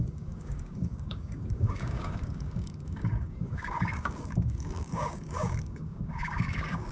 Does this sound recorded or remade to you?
remade